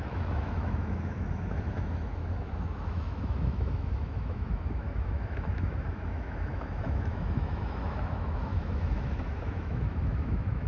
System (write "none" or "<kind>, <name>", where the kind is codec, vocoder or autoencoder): autoencoder, DAC-VAE